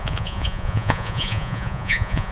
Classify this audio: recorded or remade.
remade